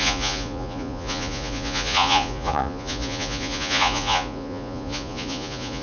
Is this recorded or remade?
remade